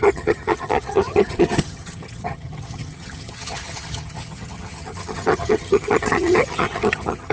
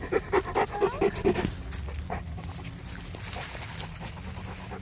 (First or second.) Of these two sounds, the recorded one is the second